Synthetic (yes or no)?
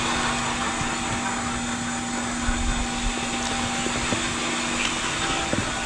no